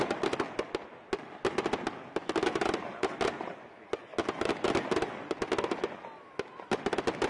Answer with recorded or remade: recorded